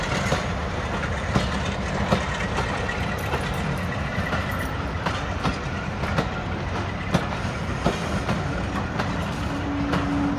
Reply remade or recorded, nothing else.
recorded